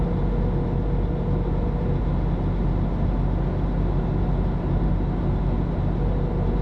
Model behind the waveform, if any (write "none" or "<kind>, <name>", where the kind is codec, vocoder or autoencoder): none